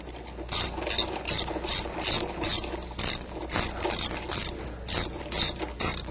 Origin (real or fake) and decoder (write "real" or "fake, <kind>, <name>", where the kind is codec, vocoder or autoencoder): real